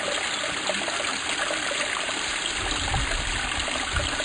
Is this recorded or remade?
recorded